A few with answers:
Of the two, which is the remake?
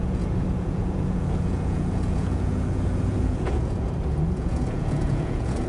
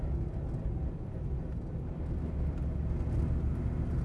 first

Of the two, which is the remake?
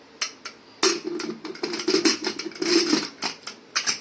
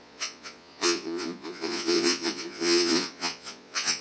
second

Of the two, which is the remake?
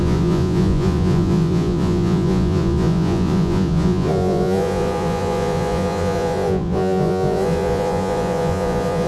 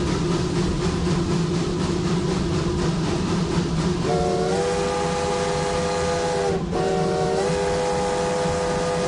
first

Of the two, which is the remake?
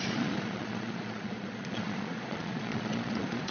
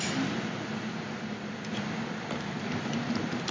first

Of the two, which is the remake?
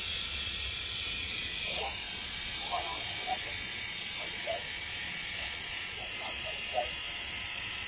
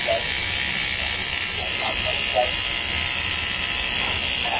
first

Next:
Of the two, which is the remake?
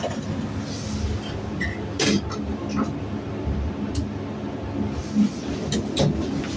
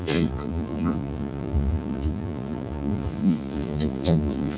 second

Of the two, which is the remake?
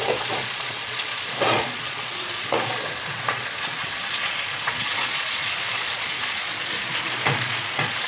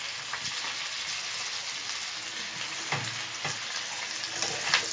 first